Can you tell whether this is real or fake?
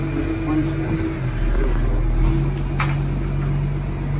real